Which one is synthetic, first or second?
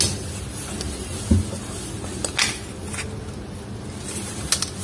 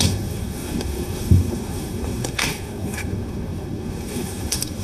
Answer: second